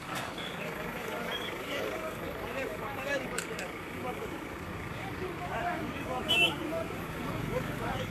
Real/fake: fake